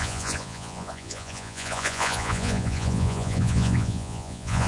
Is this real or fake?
fake